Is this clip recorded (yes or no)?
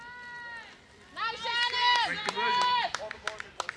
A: yes